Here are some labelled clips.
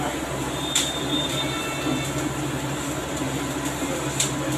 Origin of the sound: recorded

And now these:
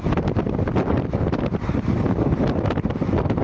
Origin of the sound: remade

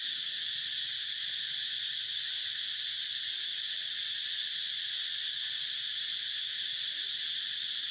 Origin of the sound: remade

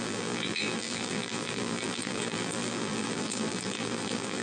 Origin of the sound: remade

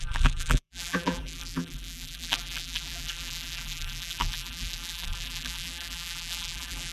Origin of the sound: remade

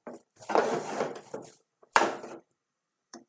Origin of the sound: remade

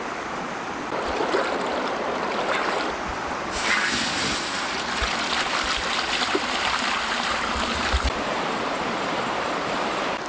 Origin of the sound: remade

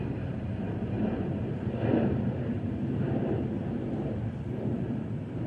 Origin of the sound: remade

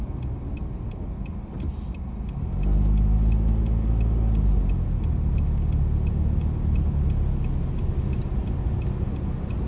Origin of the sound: recorded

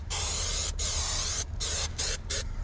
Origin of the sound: remade